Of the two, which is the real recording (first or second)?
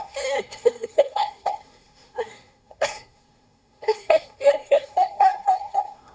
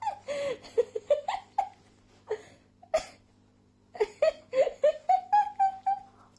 second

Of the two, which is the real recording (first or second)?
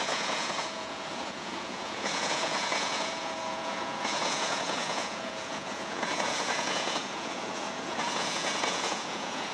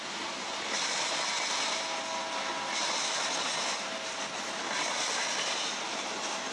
second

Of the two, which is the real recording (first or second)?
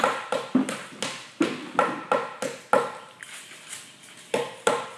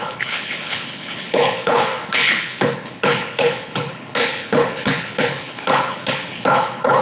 first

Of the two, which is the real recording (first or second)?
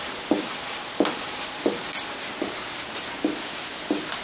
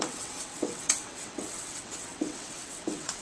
first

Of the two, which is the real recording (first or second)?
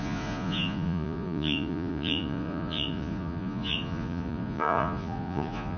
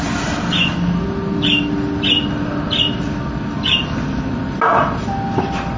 second